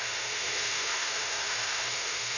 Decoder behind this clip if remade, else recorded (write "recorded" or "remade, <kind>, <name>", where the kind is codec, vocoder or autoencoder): remade, autoencoder, DAC-VAE